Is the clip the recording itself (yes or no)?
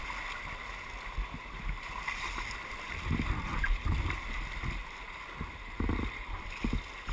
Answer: yes